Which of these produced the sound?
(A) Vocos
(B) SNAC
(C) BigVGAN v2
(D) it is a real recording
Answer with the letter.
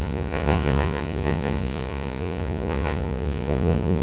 A